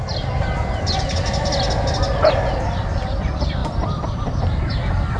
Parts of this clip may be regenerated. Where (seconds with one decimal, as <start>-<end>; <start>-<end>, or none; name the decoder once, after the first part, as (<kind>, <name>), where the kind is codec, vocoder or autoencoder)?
none